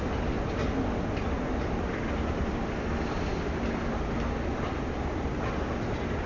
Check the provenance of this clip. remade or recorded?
recorded